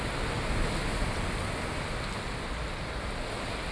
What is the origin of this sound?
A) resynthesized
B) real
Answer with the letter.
B